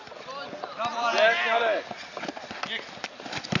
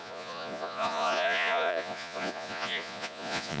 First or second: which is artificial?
second